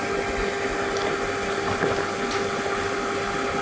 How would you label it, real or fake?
real